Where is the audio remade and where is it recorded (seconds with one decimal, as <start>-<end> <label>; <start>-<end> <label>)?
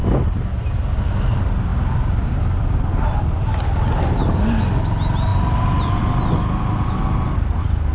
0.0-7.9 recorded